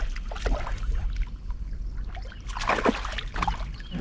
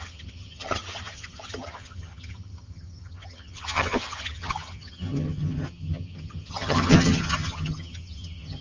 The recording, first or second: first